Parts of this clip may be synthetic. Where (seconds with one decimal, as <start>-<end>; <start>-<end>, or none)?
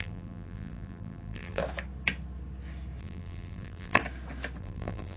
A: 0.0-1.6; 3.0-4.0; 4.6-5.2